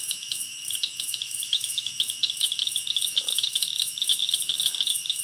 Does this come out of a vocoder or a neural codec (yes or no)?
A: yes